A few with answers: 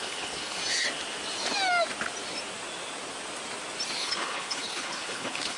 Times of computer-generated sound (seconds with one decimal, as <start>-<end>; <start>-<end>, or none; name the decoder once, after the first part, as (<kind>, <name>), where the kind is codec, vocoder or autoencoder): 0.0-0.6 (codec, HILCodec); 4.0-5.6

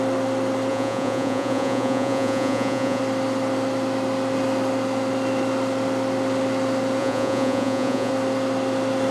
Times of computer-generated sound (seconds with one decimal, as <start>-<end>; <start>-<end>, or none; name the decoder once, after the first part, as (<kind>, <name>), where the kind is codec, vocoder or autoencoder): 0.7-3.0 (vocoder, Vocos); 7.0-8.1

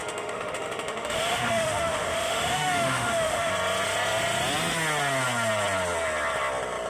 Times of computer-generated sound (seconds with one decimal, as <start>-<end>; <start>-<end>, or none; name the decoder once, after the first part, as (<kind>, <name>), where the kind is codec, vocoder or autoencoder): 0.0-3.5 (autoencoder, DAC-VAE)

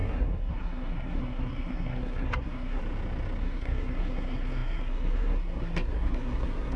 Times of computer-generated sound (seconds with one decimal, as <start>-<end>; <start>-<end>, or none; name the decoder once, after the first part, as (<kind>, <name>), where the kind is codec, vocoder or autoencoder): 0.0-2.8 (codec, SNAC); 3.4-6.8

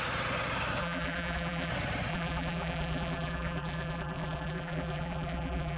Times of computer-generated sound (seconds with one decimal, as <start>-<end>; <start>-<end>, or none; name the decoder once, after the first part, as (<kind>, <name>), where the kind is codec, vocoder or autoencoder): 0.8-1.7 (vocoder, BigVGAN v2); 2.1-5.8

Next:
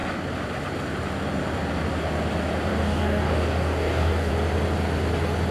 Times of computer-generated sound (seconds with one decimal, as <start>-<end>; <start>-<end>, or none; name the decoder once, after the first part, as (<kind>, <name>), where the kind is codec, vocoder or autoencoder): 2.7-4.3 (codec, DAC)